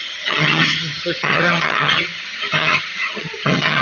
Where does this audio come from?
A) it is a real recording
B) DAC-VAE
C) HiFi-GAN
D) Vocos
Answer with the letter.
C